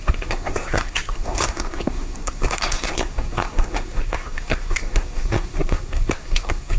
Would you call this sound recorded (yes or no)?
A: no